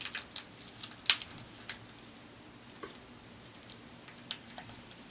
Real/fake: real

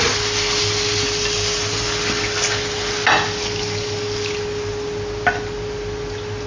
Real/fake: real